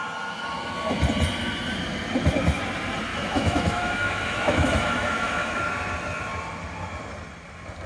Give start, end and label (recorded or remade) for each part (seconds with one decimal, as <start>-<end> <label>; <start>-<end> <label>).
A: 0.0-3.1 recorded; 3.1-5.6 remade; 5.6-7.9 recorded